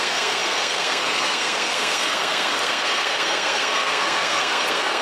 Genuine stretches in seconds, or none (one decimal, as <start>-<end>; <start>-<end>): none